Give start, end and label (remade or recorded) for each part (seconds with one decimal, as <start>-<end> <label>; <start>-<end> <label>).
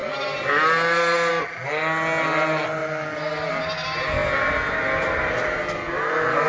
0.0-6.5 recorded